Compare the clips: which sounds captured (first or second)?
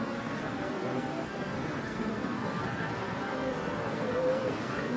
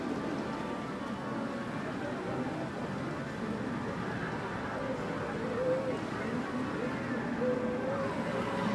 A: second